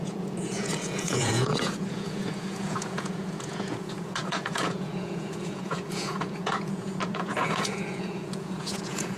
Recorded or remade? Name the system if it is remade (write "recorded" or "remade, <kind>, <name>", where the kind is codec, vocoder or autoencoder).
remade, vocoder, Vocos